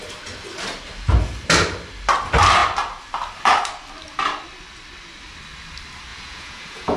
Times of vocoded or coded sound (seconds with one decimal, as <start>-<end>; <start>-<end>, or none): 6.1-7.0